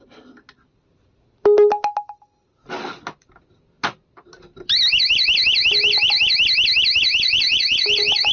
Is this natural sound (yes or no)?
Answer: yes